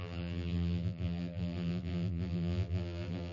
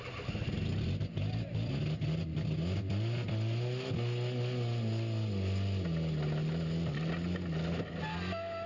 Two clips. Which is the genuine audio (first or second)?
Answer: second